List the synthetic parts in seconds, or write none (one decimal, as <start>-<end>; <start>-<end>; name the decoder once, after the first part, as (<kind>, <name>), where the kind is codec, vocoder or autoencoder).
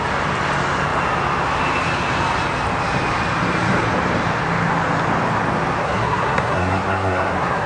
5.8-7.7 (codec, SNAC)